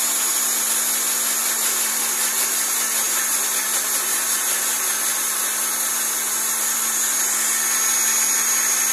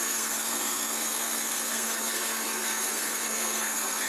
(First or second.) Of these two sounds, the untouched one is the first